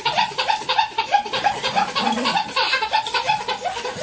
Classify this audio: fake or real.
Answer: fake